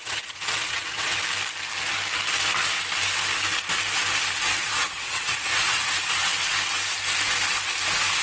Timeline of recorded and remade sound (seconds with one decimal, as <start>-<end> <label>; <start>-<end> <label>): 0.0-1.2 remade; 1.2-4.6 recorded; 4.6-5.9 remade; 5.9-8.2 recorded